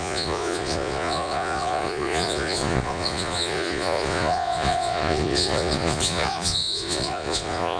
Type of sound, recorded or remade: remade